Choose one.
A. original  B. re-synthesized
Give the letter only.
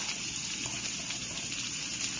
A